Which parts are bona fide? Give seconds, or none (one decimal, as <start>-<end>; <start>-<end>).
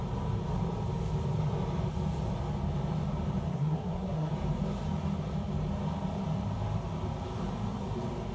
0.0-3.5; 4.3-8.3